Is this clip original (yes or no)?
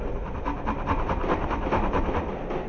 yes